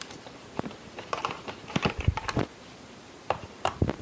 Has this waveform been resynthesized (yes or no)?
yes